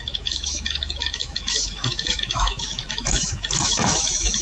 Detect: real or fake fake